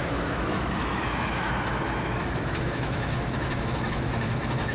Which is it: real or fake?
fake